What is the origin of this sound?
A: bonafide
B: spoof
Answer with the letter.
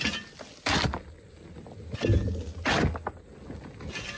A